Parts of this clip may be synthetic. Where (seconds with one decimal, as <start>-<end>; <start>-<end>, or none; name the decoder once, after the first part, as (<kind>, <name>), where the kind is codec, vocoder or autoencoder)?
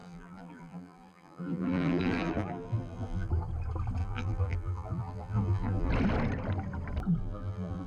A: 0.0-3.3 (vocoder, BigVGAN v2); 4.0-5.9; 7.2-7.9